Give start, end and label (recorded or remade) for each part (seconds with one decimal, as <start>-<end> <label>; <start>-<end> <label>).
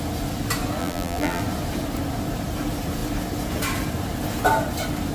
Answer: 0.0-0.8 recorded; 0.8-1.4 remade; 1.4-5.1 recorded